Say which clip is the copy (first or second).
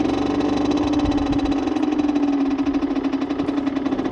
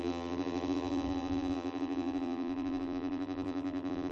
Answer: second